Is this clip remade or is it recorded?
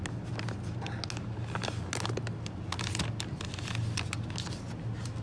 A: recorded